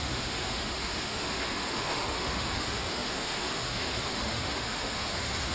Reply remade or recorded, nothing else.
remade